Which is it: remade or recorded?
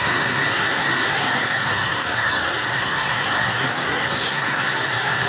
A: remade